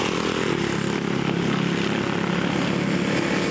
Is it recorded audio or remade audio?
recorded